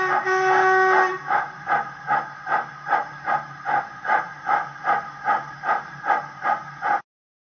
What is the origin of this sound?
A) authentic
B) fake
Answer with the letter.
A